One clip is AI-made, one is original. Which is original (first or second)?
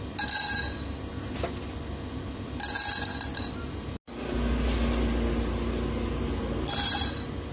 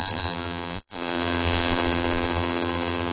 first